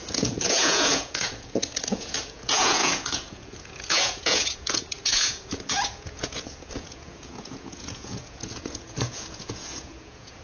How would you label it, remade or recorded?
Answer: remade